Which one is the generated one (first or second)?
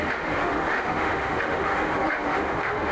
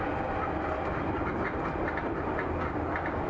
first